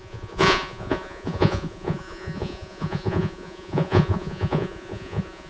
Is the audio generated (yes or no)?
yes